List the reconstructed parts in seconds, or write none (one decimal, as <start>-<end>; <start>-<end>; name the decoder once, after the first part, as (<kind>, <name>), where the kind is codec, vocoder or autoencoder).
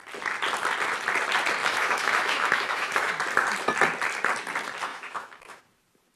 1.6-3.1 (autoencoder, DAC-VAE); 4.9-5.6